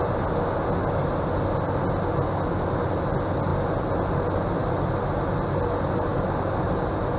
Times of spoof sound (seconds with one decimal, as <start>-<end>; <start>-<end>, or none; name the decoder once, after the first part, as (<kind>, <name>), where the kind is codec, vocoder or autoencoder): none